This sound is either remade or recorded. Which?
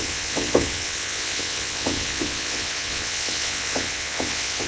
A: remade